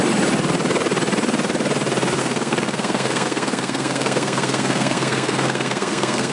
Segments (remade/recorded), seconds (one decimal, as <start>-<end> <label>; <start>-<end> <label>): 0.0-2.2 recorded; 2.2-6.3 remade